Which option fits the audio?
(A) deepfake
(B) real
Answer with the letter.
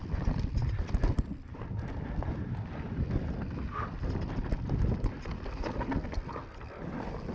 B